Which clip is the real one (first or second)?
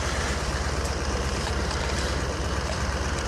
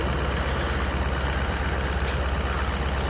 second